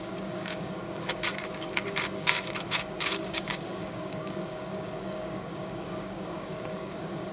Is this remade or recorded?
remade